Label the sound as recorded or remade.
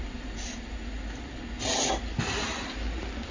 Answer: recorded